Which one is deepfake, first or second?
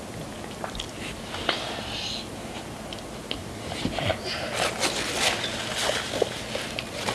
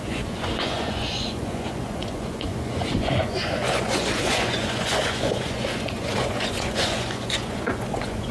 second